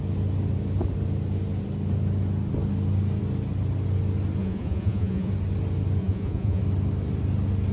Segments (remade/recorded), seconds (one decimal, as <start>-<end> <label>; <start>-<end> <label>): 0.0-4.4 recorded; 4.4-5.3 remade; 5.3-6.0 recorded; 6.0-6.6 remade; 6.6-7.7 recorded